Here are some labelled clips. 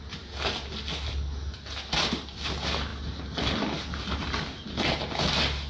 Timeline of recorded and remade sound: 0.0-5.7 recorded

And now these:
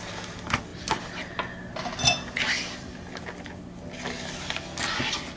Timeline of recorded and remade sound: 0.0-5.4 recorded

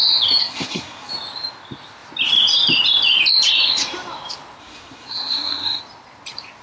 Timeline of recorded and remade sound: 0.0-0.4 recorded; 0.4-1.1 remade; 1.1-4.6 recorded; 4.6-5.8 remade; 5.8-6.6 recorded

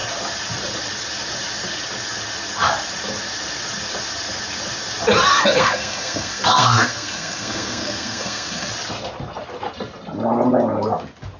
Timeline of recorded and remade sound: 0.0-5.3 recorded; 5.3-8.7 remade; 8.7-11.4 recorded